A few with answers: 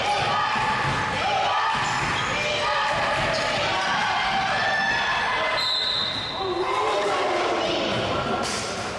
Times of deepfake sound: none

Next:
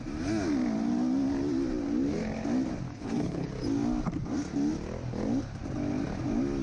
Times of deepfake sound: 2.9-3.5

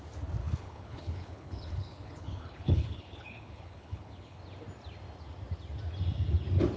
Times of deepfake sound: 0.4-4.4

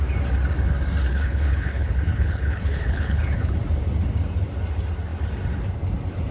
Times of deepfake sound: 1.1-3.6

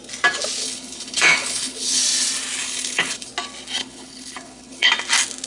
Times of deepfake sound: 0.6-2.0; 2.6-3.3; 3.8-4.9

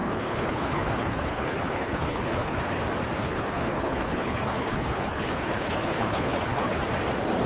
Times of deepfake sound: 0.0-2.8; 3.2-6.8